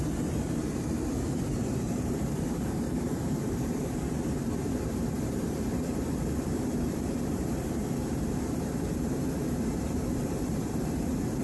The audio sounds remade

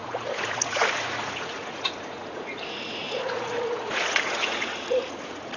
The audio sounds remade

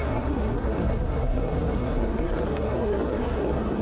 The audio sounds remade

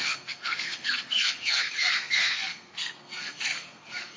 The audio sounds remade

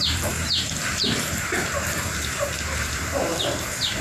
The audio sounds remade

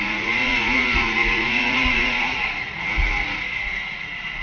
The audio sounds remade